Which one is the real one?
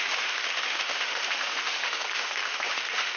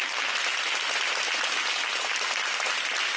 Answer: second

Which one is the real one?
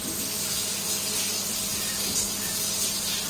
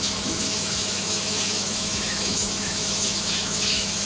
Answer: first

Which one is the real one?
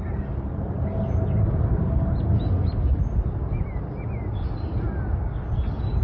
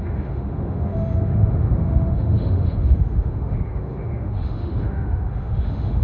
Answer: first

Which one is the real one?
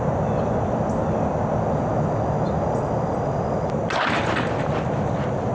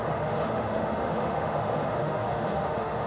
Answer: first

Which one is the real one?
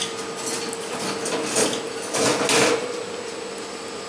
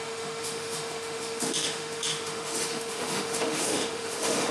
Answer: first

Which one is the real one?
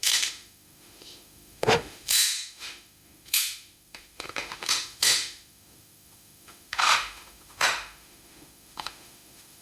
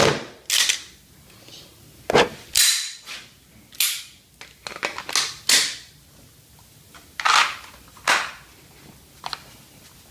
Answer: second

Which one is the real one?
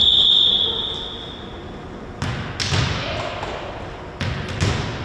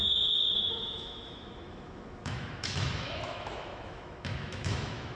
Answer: first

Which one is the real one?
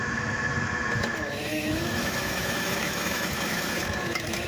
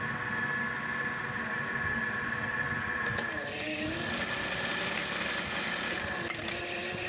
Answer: second